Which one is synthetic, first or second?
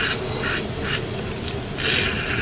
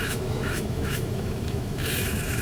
second